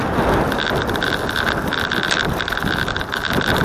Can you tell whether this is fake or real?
real